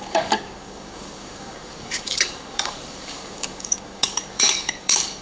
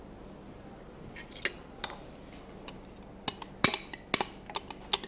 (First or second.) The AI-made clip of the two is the first